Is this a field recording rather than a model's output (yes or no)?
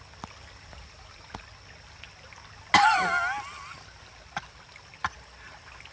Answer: yes